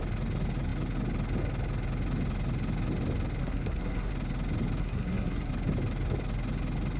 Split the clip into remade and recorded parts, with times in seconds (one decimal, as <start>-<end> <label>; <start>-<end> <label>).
0.0-3.4 recorded; 3.4-4.1 remade; 4.1-4.8 recorded; 4.8-5.5 remade; 5.5-7.0 recorded